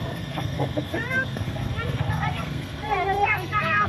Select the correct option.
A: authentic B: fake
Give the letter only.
B